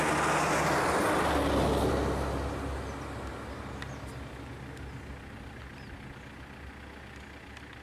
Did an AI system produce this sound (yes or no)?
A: no